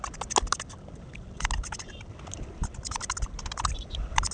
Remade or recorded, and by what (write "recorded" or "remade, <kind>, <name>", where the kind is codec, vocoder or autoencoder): recorded